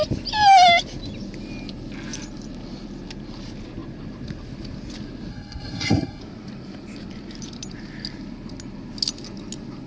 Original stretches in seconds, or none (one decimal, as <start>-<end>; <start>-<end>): 0.0-5.3; 6.2-9.9